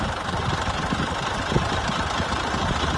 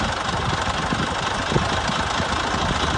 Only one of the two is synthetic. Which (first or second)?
first